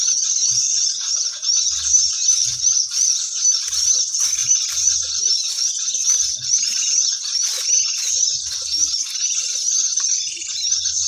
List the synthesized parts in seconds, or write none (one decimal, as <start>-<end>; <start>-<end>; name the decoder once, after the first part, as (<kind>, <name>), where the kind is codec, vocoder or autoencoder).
none